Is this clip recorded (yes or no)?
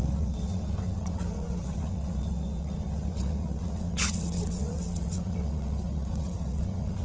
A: no